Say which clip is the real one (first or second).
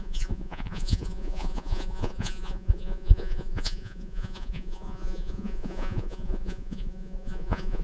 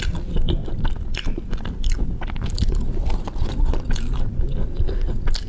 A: second